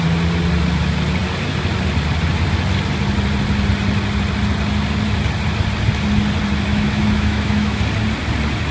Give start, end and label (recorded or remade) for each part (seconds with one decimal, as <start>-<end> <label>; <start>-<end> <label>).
0.0-6.7 recorded; 6.7-7.8 remade; 7.8-8.7 recorded